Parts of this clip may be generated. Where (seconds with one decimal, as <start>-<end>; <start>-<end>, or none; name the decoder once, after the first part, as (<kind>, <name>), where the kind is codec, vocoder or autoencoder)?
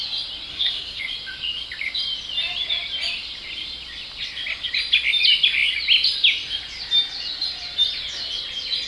0.5-1.0 (codec, SNAC)